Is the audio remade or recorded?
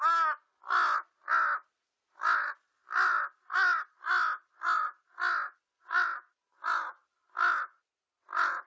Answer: recorded